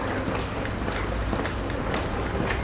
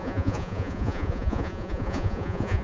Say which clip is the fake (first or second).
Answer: second